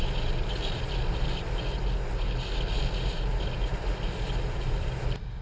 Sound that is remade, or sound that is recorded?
recorded